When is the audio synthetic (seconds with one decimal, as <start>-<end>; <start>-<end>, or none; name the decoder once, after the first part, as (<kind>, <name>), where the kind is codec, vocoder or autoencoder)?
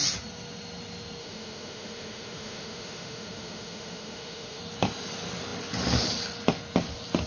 1.2-4.6 (autoencoder, DAC-VAE)